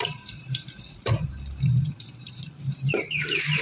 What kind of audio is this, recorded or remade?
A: remade